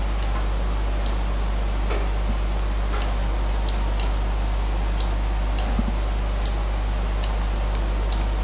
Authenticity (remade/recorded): recorded